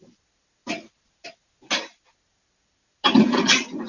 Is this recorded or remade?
recorded